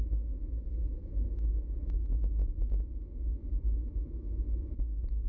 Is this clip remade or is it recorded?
remade